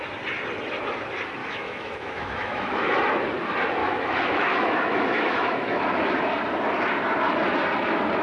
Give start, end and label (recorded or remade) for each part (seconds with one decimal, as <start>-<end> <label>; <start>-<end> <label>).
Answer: 0.0-1.4 recorded; 1.4-2.9 remade; 2.9-3.8 recorded; 3.8-5.8 remade; 5.8-8.2 recorded